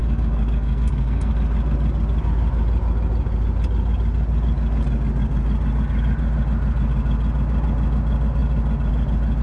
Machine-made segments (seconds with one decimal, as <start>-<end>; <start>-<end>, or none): 0.0-1.3